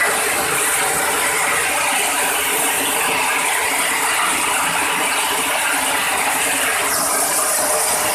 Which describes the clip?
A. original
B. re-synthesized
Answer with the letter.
A